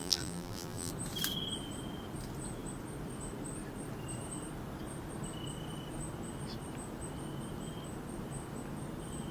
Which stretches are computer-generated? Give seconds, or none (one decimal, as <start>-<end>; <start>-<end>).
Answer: 0.0-0.9